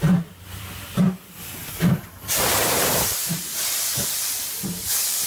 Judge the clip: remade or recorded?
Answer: remade